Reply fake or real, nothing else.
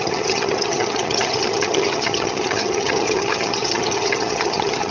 fake